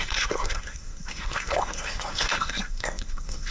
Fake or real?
fake